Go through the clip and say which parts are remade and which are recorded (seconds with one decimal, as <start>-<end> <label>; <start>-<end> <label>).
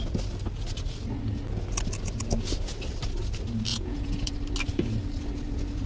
0.0-3.7 recorded; 3.7-4.3 remade; 4.3-5.9 recorded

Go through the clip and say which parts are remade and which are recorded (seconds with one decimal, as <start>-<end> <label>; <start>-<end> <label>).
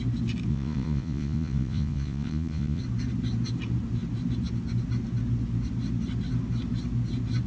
0.0-0.5 recorded; 0.5-2.8 remade; 2.8-7.5 recorded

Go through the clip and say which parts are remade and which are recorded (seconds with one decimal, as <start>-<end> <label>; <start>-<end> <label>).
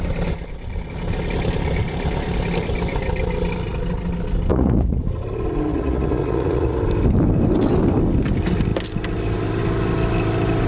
0.0-4.5 recorded; 4.5-5.0 remade; 5.0-5.7 recorded; 5.7-6.8 remade; 6.8-10.7 recorded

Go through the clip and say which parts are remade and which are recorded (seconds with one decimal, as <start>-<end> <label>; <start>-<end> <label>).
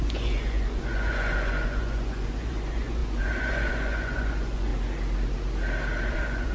0.0-4.7 remade; 4.7-6.1 recorded; 6.1-6.5 remade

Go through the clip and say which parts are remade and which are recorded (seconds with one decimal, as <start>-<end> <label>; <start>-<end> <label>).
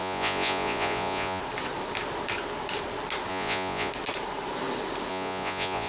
0.0-1.4 remade; 1.4-3.3 recorded; 3.3-3.9 remade; 3.9-5.1 recorded; 5.1-5.9 remade